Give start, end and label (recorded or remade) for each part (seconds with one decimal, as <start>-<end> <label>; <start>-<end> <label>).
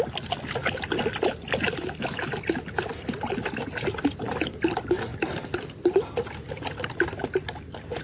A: 0.0-8.0 recorded